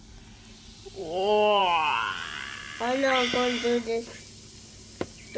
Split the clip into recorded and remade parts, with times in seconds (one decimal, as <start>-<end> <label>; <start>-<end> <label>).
0.0-5.4 recorded